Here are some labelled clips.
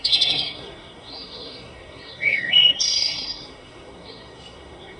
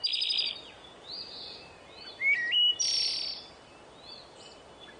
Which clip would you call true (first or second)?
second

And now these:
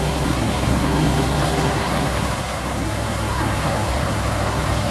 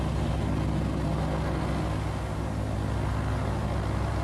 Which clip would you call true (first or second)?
second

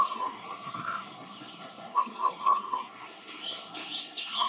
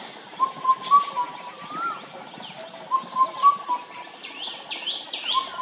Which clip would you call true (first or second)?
second